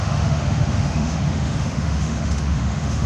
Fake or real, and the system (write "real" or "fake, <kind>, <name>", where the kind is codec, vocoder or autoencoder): fake, autoencoder, DAC-VAE